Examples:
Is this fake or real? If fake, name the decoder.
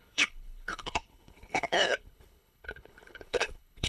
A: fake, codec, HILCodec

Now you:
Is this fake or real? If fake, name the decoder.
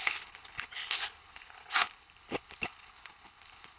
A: fake, codec, HILCodec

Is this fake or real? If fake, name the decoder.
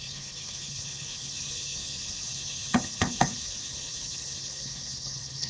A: fake, codec, HILCodec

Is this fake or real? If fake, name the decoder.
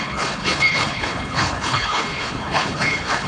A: fake, codec, HILCodec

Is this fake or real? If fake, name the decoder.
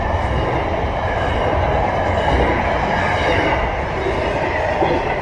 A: real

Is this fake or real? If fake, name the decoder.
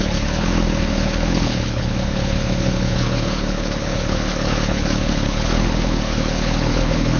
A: fake, codec, HILCodec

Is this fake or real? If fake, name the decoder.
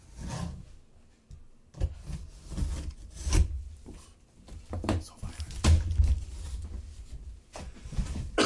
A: real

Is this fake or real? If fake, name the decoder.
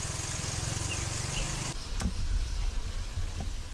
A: real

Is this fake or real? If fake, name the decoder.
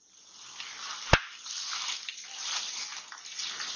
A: real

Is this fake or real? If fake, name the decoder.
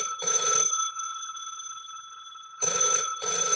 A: fake, codec, HILCodec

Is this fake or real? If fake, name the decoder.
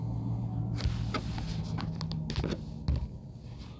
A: real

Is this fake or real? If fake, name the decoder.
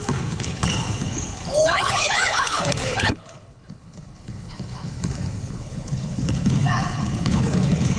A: fake, codec, HILCodec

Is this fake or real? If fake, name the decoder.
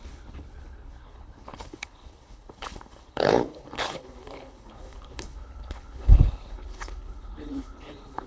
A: fake, codec, HILCodec